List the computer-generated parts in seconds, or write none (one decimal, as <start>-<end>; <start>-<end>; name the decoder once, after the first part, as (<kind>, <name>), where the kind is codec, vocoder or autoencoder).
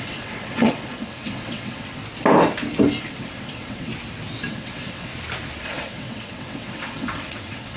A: 0.0-2.0 (vocoder, WaveNeXt); 3.0-3.9; 4.5-5.1; 5.6-7.8